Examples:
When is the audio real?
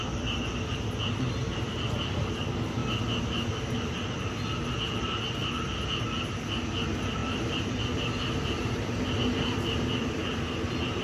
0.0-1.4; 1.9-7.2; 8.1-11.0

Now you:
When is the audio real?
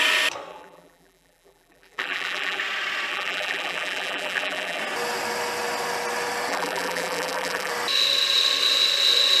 0.0-0.5; 2.6-3.1; 4.8-6.5; 7.7-9.4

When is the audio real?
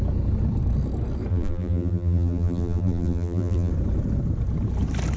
0.0-1.3; 3.7-5.2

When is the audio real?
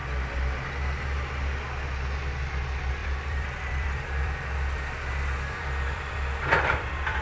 0.0-3.0